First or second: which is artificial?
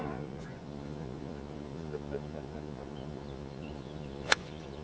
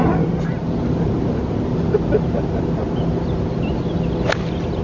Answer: first